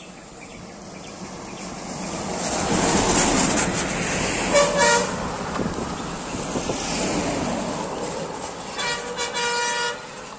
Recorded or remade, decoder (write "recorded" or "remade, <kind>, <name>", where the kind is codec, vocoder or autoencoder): recorded